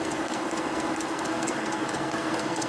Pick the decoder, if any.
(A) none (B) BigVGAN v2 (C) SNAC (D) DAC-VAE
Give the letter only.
C